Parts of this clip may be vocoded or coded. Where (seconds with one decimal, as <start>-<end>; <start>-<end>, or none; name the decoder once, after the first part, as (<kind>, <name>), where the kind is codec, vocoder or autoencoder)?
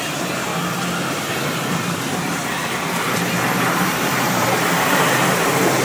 0.0-0.5 (vocoder, BigVGAN v2); 1.1-5.8